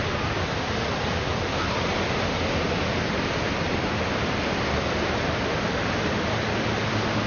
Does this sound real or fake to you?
real